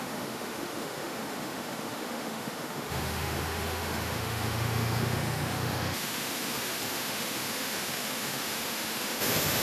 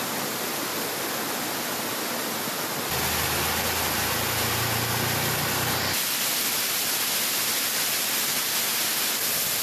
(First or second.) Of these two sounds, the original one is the second